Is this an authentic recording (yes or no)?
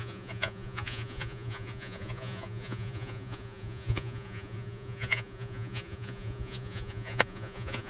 no